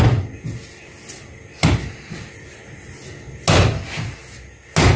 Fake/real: real